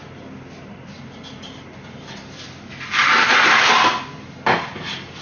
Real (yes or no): yes